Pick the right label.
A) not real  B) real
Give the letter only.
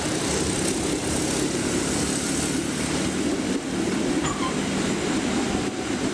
B